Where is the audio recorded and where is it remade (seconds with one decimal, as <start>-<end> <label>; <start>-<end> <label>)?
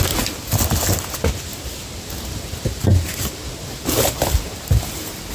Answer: 0.0-5.3 recorded